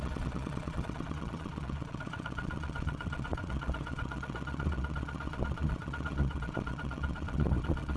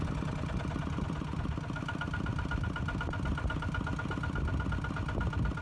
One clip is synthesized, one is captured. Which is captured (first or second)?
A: second